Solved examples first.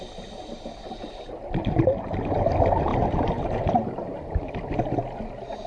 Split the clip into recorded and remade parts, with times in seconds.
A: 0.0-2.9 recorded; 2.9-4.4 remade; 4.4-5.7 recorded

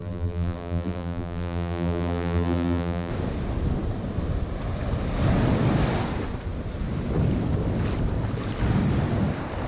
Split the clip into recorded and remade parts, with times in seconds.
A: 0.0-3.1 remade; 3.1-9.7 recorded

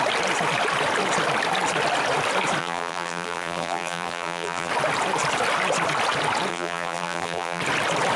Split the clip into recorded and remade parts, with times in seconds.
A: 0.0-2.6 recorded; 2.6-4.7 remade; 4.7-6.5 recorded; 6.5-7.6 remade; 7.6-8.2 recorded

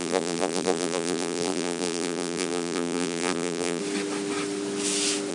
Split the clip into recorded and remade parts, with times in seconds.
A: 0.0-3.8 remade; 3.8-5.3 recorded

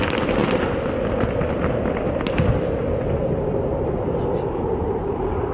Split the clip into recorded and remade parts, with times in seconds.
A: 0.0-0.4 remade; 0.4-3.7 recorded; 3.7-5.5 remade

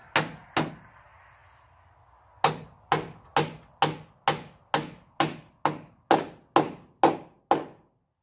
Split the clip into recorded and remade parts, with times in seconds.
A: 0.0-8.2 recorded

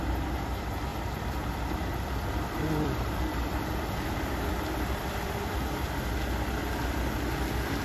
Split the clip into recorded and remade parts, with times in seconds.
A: 0.0-0.9 recorded; 0.9-5.6 remade; 5.6-7.8 recorded

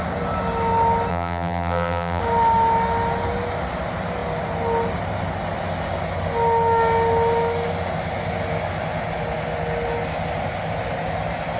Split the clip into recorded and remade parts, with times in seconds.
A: 0.0-1.1 recorded; 1.1-2.2 remade; 2.2-11.6 recorded